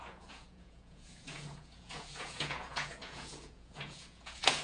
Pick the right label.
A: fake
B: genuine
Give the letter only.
A